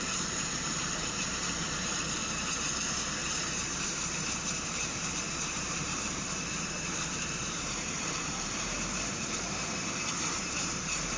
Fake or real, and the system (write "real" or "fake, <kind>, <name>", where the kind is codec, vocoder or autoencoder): fake, vocoder, BigVGAN v2